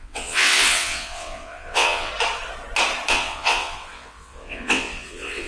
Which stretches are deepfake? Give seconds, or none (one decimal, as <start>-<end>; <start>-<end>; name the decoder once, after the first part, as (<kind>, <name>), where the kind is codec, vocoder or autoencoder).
0.0-2.1 (vocoder, WaveNeXt); 3.1-5.5